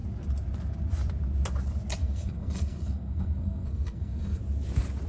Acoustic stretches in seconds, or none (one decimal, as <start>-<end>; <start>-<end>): 0.0-2.0; 4.4-5.1